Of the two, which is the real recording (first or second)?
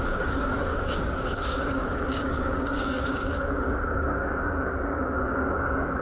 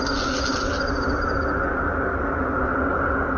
second